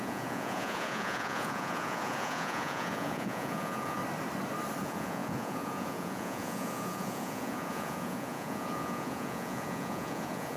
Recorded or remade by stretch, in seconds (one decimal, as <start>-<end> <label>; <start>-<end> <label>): 0.0-4.0 remade; 4.0-4.8 recorded; 4.8-10.6 remade